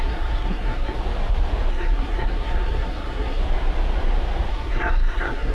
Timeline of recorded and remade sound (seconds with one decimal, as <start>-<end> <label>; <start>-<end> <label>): 0.0-1.0 remade; 1.0-1.7 recorded; 1.7-3.4 remade; 3.4-4.5 recorded; 4.5-5.5 remade

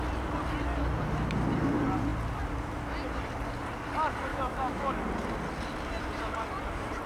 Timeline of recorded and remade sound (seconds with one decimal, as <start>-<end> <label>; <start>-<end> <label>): 0.0-4.3 recorded; 4.3-5.0 remade; 5.0-7.1 recorded